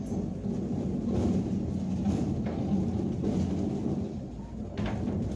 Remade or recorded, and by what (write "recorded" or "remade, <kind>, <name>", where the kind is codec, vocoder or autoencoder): recorded